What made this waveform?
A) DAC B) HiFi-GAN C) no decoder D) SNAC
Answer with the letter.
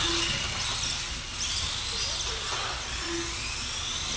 C